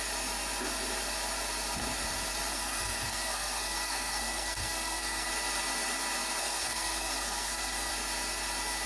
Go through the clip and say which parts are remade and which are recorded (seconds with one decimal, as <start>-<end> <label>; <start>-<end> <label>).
0.0-2.5 recorded; 2.5-5.3 remade; 5.3-6.4 recorded; 6.4-7.9 remade; 7.9-8.9 recorded